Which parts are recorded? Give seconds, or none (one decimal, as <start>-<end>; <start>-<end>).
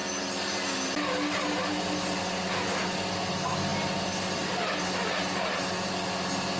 0.0-6.6